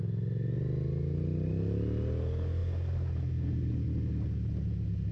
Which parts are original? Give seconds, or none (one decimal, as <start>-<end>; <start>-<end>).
0.0-5.1